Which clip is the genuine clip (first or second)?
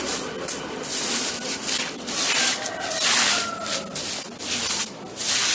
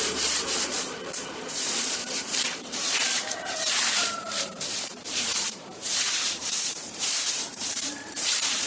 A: first